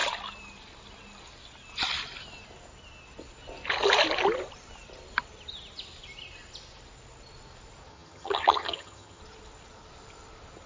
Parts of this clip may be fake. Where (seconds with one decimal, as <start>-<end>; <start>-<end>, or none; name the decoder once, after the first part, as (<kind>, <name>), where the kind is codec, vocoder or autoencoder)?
7.9-9.2 (vocoder, HiFi-GAN)